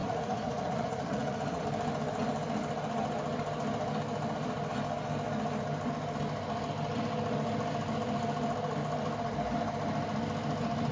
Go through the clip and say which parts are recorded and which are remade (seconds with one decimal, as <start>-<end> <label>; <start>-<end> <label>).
0.0-1.6 remade; 1.6-10.9 recorded